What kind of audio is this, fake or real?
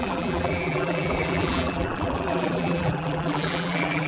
fake